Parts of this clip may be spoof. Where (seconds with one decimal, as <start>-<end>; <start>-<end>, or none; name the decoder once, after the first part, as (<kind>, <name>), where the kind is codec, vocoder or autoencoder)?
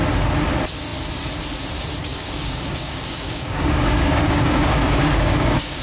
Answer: 2.1-5.8 (codec, DAC)